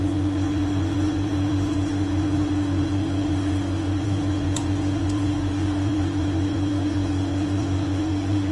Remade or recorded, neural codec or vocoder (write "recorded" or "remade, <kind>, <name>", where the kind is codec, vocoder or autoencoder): remade, vocoder, Vocos